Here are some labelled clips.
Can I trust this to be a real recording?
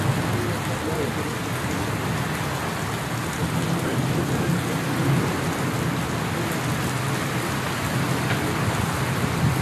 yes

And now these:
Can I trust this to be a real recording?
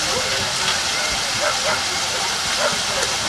yes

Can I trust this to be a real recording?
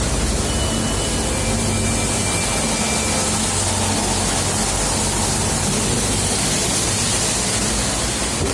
yes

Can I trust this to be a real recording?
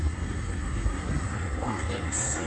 no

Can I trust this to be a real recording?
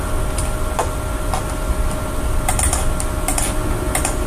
yes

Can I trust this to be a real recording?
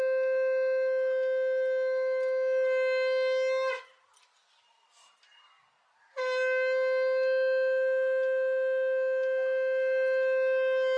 yes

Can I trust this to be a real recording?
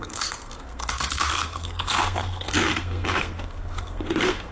no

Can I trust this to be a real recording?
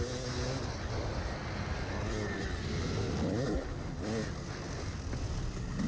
yes